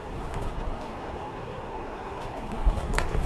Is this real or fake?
fake